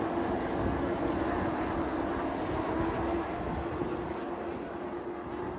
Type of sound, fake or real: real